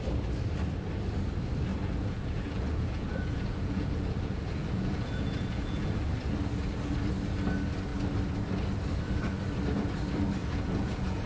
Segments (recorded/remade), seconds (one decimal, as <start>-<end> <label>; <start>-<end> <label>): 0.0-1.7 recorded; 1.7-6.1 remade; 6.1-10.4 recorded; 10.4-11.3 remade